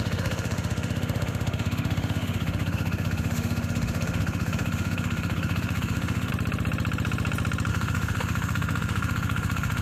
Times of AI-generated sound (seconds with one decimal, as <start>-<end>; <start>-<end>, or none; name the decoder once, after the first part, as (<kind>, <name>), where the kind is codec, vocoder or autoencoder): 0.0-6.3 (autoencoder, DAC-VAE); 7.7-9.8